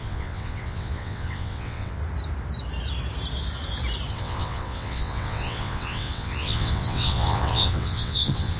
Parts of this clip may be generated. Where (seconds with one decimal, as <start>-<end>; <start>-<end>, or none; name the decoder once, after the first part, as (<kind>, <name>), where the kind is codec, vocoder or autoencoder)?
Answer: 0.0-2.0 (vocoder, WaveNeXt); 4.1-8.6